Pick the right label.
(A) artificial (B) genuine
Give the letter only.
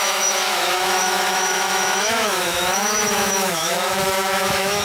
A